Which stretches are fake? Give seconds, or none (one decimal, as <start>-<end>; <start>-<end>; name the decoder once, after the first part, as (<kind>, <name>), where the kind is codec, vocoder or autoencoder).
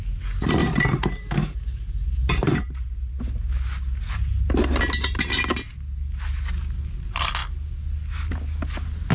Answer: 0.6-3.2 (vocoder, BigVGAN v2)